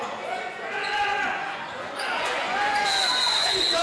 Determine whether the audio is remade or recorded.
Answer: remade